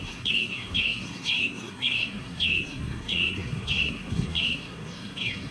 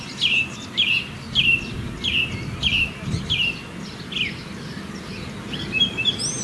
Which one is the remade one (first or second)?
first